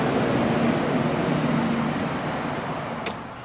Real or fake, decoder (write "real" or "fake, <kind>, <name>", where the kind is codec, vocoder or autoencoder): real